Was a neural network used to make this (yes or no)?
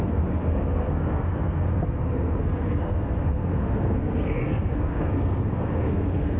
yes